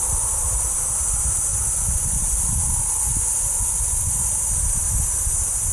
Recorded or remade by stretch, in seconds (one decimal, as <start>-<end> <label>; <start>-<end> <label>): 0.0-1.5 recorded; 1.5-2.2 remade; 2.2-2.6 recorded; 2.6-4.3 remade; 4.3-5.7 recorded